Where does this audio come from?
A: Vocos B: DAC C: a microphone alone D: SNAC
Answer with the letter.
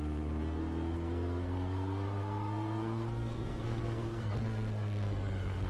D